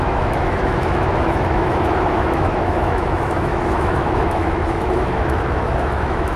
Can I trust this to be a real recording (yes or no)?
no